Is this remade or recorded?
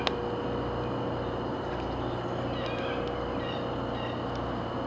recorded